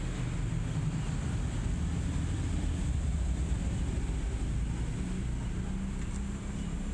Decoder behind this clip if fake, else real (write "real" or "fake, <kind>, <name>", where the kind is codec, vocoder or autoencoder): real